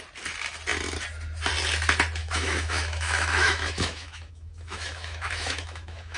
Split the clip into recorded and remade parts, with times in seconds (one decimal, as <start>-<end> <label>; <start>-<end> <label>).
0.0-2.2 recorded; 2.2-6.2 remade